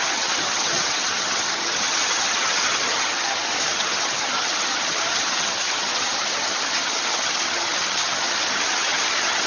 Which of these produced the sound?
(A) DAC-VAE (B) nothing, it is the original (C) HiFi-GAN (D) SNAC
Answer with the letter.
C